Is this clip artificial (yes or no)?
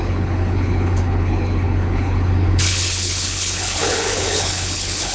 yes